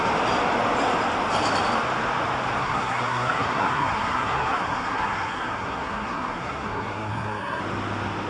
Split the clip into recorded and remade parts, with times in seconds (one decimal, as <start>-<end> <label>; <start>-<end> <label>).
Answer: 0.0-2.6 recorded; 2.6-7.6 remade; 7.6-8.3 recorded